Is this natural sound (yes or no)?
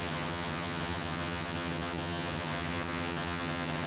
no